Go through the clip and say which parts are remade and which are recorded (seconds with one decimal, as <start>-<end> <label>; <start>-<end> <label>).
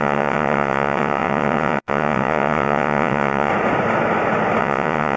0.0-3.5 remade; 3.5-4.6 recorded; 4.6-5.2 remade